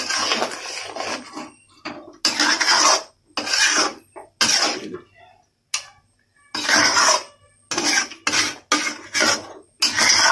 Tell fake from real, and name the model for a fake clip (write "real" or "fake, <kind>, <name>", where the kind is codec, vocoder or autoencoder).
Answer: real